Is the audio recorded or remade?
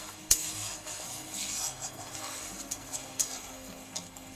remade